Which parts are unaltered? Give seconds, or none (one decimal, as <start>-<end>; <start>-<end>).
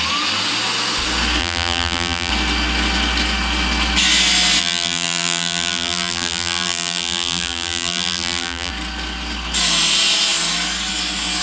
0.0-1.4; 2.3-4.6; 8.7-11.4